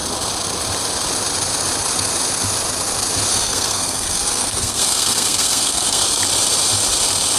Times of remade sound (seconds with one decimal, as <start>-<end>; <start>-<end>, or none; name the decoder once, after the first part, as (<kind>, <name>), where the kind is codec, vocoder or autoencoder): 3.3-6.2 (codec, SNAC)